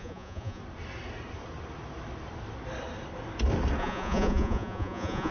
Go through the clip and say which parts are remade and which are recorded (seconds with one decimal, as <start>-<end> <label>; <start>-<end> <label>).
0.0-0.6 remade; 0.6-3.8 recorded; 3.8-5.3 remade